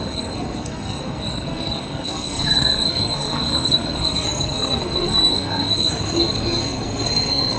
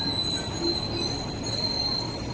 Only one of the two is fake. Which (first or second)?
first